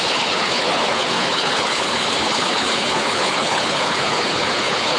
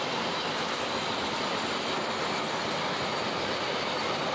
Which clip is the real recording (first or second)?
second